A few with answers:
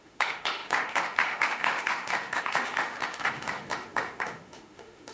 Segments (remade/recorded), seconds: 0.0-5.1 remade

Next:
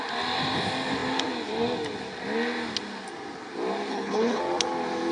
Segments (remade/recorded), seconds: 0.0-3.9 recorded; 3.9-4.4 remade; 4.4-5.1 recorded

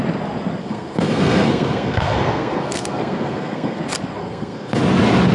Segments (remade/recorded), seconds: 0.0-0.6 recorded; 0.6-3.8 remade; 3.8-4.2 recorded; 4.2-4.8 remade; 4.8-5.3 recorded

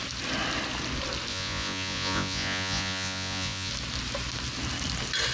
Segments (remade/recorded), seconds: 0.0-1.3 recorded; 1.3-3.7 remade; 3.7-5.3 recorded

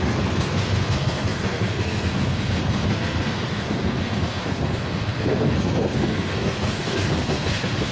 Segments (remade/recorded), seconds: 0.0-7.9 remade

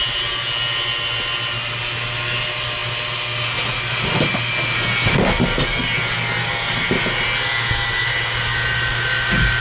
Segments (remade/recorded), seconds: 0.0-8.9 recorded; 8.9-9.6 remade